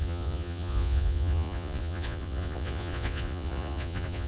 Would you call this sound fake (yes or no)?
yes